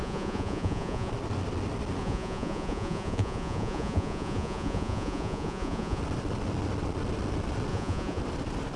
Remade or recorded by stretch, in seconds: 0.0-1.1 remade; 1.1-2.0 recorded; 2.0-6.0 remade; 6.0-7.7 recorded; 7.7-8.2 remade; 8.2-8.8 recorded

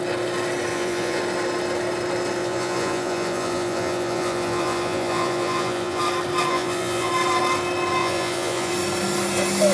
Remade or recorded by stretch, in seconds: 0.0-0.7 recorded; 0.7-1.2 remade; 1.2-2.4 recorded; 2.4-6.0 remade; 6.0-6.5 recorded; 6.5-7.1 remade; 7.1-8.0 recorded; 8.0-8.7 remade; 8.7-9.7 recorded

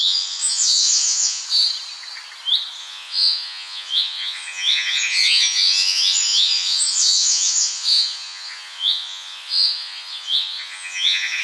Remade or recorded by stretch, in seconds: 0.0-1.4 remade; 1.4-2.8 recorded; 2.8-11.4 remade